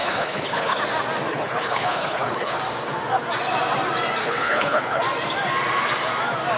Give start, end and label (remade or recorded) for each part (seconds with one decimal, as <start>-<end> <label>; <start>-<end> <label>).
0.0-0.8 remade; 0.8-1.3 recorded; 1.3-2.6 remade; 2.6-4.2 recorded; 4.2-5.0 remade; 5.0-6.6 recorded